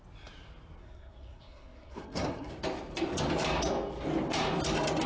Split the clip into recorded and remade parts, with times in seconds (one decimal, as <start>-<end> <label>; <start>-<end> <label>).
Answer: 0.0-0.8 recorded; 0.8-2.5 remade; 2.5-5.1 recorded